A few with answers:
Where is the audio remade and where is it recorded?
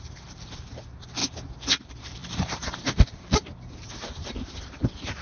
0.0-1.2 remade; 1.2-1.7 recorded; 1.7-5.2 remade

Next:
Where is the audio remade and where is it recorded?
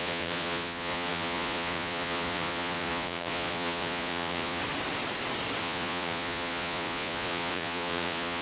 0.0-4.6 remade; 4.6-5.6 recorded; 5.6-8.4 remade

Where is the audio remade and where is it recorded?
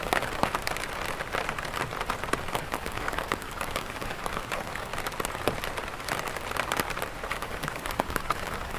0.0-0.5 remade; 0.5-2.5 recorded; 2.5-4.9 remade; 4.9-7.3 recorded; 7.3-8.8 remade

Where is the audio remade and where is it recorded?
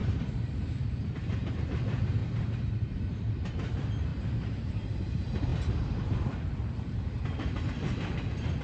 0.0-1.6 remade; 1.6-4.1 recorded; 4.1-4.7 remade; 4.7-8.6 recorded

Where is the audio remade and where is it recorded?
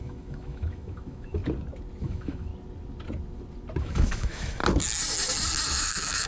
0.0-1.4 remade; 1.4-2.0 recorded; 2.0-2.5 remade; 2.5-3.8 recorded; 3.8-4.6 remade; 4.6-5.8 recorded; 5.8-6.3 remade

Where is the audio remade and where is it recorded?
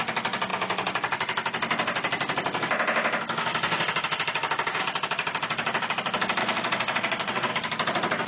0.0-6.4 recorded; 6.4-7.5 remade; 7.5-8.3 recorded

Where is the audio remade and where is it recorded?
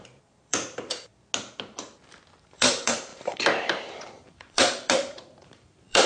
0.0-1.1 remade; 1.1-2.4 recorded; 2.4-6.1 remade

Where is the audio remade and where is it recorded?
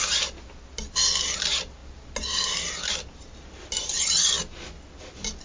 0.0-5.4 recorded